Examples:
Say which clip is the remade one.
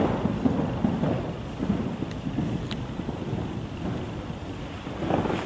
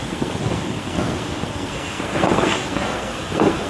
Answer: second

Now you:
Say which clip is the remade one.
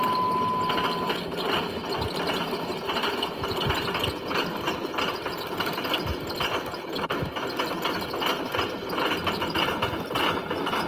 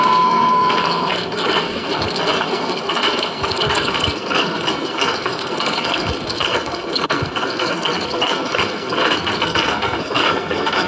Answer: second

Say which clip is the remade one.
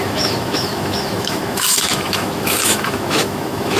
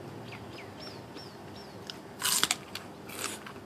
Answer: first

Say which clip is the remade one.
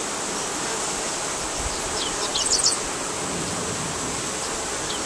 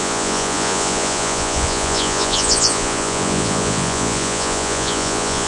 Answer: second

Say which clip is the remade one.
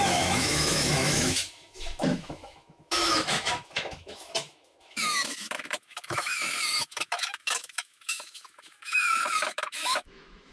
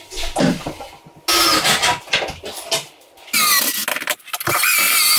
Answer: first